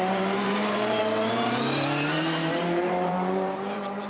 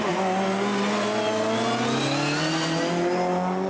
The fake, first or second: first